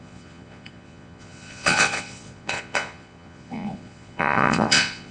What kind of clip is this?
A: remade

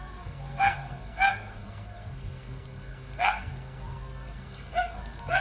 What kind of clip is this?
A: remade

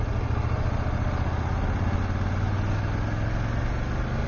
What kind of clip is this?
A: recorded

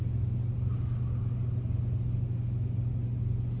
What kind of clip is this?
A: recorded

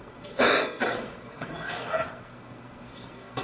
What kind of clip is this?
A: remade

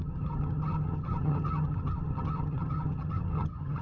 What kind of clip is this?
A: remade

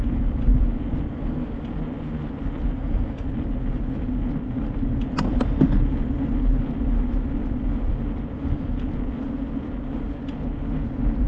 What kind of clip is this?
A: recorded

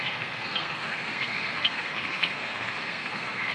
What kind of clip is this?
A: remade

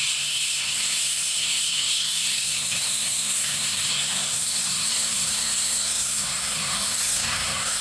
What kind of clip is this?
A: remade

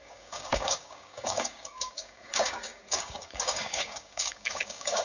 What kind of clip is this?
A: remade